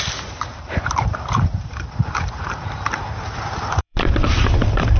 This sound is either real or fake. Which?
fake